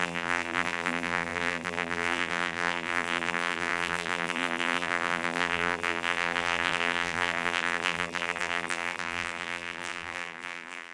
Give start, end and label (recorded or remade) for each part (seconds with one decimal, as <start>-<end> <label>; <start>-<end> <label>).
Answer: 0.0-10.9 remade